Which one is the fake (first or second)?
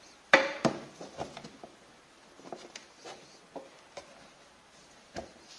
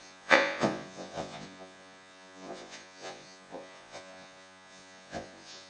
second